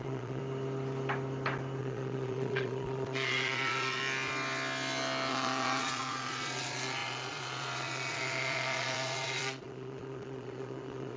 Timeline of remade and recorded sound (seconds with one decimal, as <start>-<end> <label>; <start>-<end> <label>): 0.0-0.4 remade; 0.4-1.8 recorded; 1.8-4.0 remade; 4.0-5.3 recorded; 5.3-11.2 remade